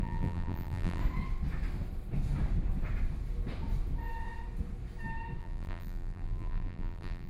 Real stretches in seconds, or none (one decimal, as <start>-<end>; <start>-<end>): 1.0-5.4